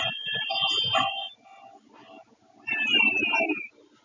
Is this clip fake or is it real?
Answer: real